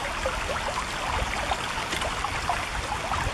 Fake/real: real